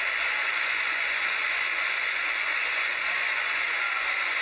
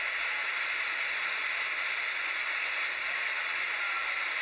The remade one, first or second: first